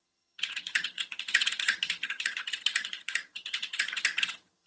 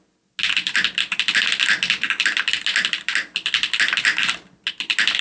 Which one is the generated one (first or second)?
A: first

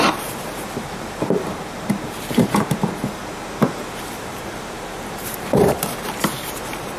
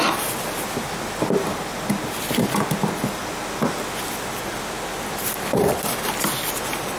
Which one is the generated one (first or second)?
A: first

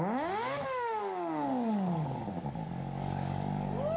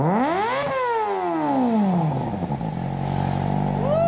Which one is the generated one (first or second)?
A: first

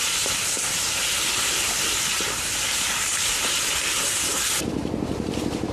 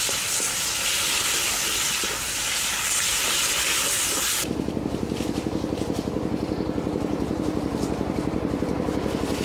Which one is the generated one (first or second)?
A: first